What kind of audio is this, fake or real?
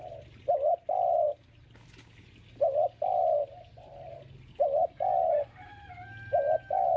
real